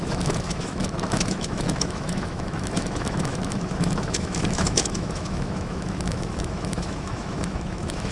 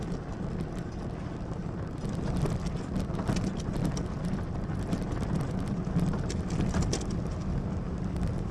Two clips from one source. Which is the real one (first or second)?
second